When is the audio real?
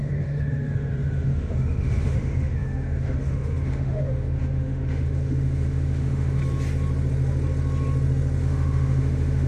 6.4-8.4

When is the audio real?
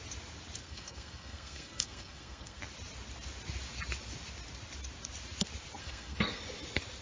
0.0-0.6; 2.6-5.8; 6.4-7.0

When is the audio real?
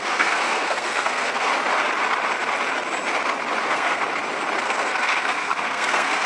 1.5-3.6; 4.0-4.6